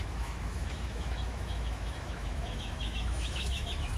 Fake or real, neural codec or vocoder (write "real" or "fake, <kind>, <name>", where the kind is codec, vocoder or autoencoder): fake, autoencoder, DAC-VAE